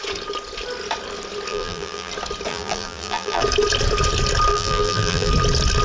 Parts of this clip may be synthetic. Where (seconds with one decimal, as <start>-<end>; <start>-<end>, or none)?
1.5-2.1; 2.5-3.4; 4.5-5.3